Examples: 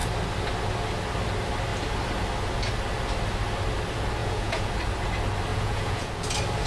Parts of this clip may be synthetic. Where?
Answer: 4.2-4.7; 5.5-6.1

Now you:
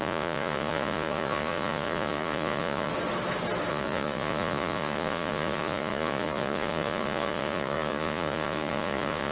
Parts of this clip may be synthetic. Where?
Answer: 0.0-2.9; 3.7-9.3

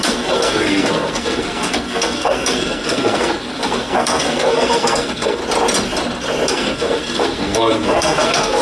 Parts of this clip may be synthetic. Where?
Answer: 0.0-5.4; 6.5-8.6

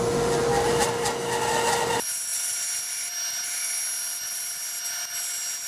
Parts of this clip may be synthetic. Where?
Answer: none

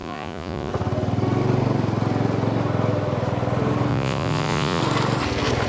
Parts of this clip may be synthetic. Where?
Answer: 0.0-0.7; 3.9-4.8

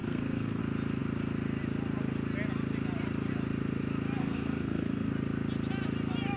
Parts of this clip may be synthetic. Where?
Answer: 0.0-0.6; 4.2-5.1

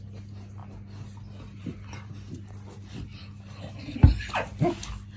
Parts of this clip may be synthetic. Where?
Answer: none